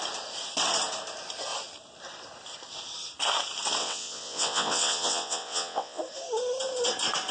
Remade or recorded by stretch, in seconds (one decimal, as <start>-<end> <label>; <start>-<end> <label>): 0.0-3.8 recorded; 3.8-6.0 remade; 6.0-7.3 recorded